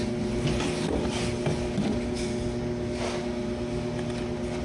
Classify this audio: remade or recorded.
recorded